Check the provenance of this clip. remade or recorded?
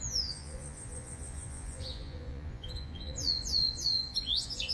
remade